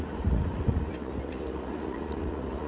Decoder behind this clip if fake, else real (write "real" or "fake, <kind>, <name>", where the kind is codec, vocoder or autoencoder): fake, vocoder, Vocos